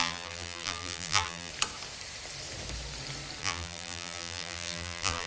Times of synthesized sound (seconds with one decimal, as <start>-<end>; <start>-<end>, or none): 0.0-1.5; 3.4-5.3